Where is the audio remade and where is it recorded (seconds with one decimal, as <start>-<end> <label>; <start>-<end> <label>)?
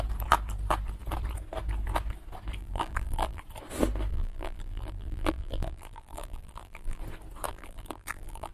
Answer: 0.0-2.6 recorded; 2.6-3.4 remade; 3.4-4.1 recorded; 4.1-7.0 remade; 7.0-7.5 recorded; 7.5-8.5 remade